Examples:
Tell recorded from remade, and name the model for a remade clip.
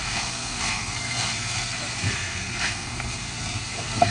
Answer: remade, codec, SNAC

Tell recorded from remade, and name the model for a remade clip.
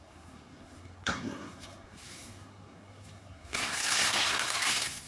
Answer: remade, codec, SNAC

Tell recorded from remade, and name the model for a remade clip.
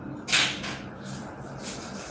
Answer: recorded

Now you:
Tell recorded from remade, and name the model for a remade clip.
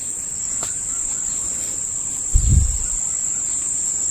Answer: recorded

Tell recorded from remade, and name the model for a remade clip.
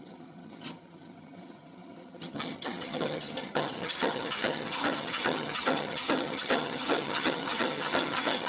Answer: remade, vocoder, HiFi-GAN